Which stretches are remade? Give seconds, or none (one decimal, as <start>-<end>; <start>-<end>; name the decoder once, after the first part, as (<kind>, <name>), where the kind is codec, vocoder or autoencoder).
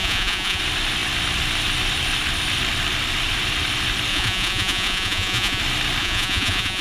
0.0-0.6 (vocoder, Vocos); 4.1-5.6; 6.0-6.8